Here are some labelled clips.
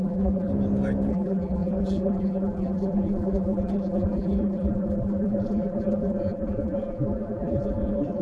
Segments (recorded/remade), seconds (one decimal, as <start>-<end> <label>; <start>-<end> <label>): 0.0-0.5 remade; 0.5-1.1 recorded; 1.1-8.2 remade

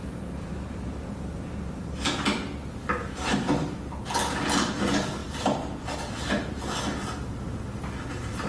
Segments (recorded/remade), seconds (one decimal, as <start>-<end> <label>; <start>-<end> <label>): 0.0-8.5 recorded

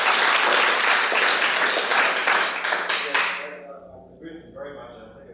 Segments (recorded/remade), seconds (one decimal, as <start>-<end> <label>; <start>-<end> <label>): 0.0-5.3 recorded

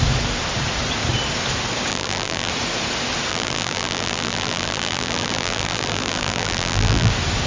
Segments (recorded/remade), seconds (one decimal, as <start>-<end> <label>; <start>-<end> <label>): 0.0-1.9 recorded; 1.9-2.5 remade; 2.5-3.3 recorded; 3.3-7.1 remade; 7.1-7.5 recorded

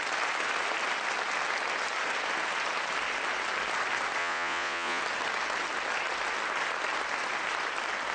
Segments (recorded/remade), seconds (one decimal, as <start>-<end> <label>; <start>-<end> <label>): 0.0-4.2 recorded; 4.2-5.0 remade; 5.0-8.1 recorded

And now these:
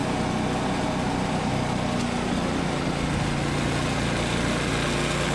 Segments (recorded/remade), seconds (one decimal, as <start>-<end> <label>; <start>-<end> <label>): 0.0-5.3 recorded

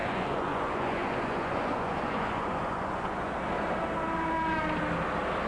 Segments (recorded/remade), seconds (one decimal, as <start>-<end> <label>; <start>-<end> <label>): 0.0-3.3 remade; 3.3-5.5 recorded